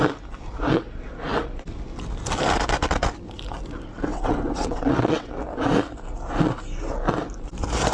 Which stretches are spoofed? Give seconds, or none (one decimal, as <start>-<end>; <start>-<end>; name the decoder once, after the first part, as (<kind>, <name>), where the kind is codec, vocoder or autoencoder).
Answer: 4.1-5.3 (vocoder, WaveNeXt)